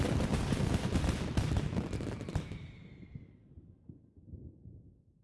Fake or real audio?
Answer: real